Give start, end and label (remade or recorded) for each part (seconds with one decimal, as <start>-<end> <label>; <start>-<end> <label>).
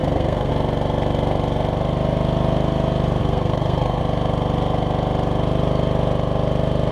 0.0-0.5 remade; 0.5-3.2 recorded; 3.2-4.0 remade; 4.0-6.9 recorded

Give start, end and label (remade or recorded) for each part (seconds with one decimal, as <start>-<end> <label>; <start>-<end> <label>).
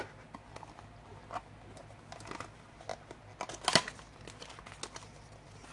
0.0-5.7 recorded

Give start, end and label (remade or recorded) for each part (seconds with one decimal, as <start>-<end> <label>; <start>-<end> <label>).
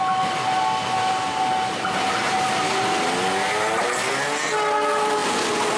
0.0-5.8 recorded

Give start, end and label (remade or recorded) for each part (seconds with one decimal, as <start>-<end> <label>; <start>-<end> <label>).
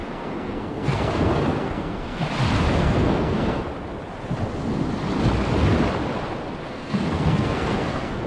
0.0-2.2 remade; 2.2-2.8 recorded; 2.8-3.7 remade; 3.7-6.7 recorded; 6.7-8.3 remade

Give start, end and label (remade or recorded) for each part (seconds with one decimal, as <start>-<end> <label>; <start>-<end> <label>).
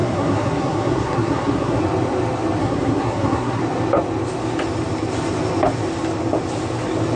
0.0-1.8 remade; 1.8-2.6 recorded; 2.6-3.6 remade; 3.6-7.2 recorded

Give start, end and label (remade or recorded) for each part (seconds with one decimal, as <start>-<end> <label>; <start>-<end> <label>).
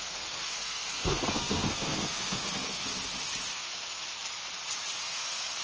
0.0-2.9 remade; 2.9-3.5 recorded; 3.5-4.0 remade; 4.0-5.0 recorded; 5.0-5.6 remade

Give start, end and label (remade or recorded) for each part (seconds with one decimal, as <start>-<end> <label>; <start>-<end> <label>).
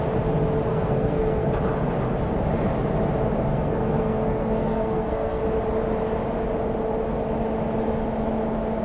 0.0-0.7 recorded; 0.7-1.5 remade; 1.5-3.5 recorded; 3.5-5.4 remade; 5.4-8.8 recorded